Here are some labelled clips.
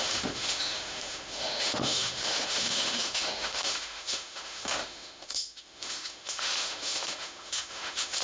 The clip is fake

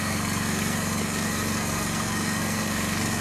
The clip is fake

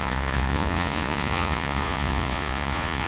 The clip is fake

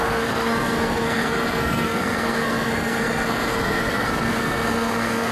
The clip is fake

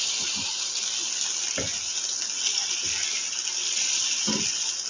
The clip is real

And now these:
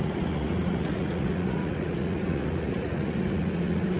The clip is fake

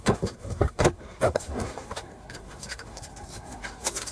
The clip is fake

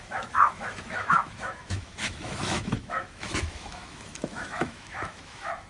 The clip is fake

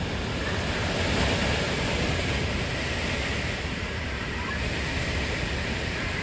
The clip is real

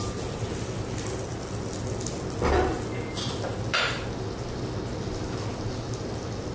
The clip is real